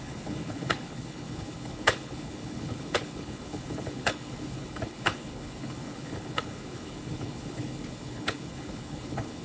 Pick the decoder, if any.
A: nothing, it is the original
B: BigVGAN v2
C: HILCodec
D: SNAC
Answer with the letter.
C